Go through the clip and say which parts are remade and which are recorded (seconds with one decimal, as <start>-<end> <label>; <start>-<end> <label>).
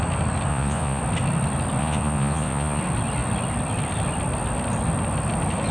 0.0-0.5 recorded; 0.5-1.0 remade; 1.0-1.8 recorded; 1.8-2.8 remade; 2.8-5.7 recorded